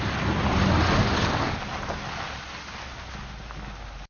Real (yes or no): yes